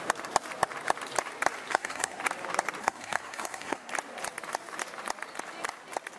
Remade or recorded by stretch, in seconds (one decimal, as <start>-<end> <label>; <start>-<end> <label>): 0.0-1.7 recorded; 1.7-2.2 remade; 2.2-2.8 recorded; 2.8-3.9 remade; 3.9-6.2 recorded